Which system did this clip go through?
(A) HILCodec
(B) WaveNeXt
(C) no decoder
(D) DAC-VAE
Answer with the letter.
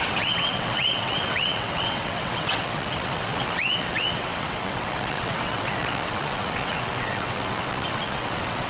B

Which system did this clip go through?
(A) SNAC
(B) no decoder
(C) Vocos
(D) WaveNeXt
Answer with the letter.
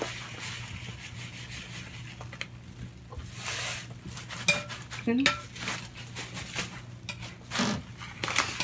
B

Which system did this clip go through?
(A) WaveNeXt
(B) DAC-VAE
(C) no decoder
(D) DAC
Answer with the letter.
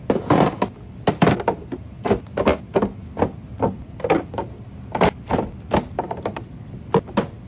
C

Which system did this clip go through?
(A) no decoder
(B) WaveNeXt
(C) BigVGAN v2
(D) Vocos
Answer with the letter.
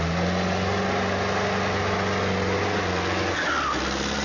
A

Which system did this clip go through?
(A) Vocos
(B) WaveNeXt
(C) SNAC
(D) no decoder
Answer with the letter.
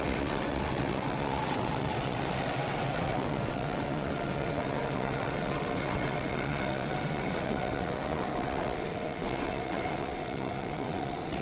B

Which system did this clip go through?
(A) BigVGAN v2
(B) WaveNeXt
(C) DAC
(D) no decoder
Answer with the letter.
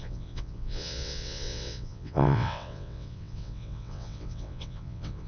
B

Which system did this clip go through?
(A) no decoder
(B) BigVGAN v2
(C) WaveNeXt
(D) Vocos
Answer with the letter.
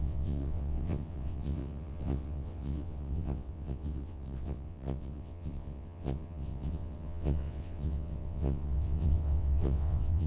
C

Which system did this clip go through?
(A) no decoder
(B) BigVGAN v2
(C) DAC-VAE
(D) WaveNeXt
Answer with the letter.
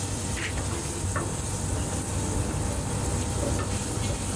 A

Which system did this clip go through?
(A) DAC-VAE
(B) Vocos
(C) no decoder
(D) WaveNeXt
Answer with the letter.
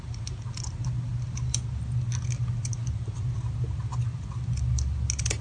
C